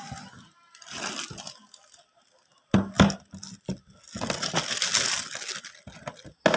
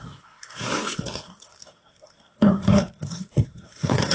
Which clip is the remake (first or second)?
second